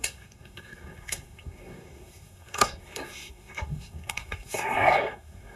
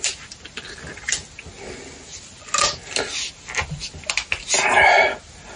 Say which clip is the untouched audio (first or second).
second